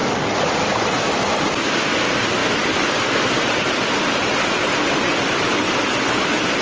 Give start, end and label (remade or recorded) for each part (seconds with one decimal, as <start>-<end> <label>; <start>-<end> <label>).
0.0-6.6 recorded